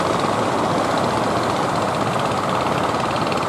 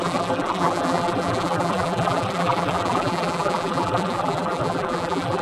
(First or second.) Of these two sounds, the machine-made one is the second